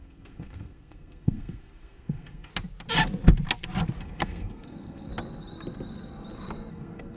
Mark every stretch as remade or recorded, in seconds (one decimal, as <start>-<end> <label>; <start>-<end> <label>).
0.0-2.5 remade; 2.5-4.0 recorded; 4.0-5.1 remade; 5.1-6.7 recorded; 6.7-7.2 remade